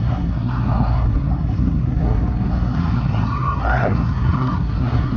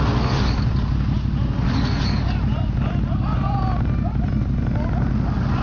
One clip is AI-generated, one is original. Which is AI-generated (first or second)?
first